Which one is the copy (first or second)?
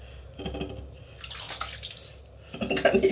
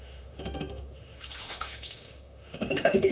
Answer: second